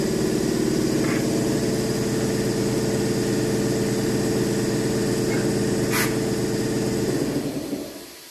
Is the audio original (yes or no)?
yes